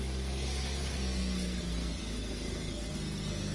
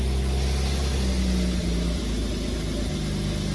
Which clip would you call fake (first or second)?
first